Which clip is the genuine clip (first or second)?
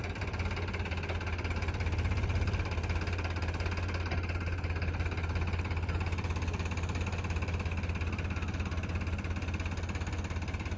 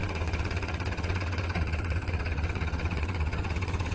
first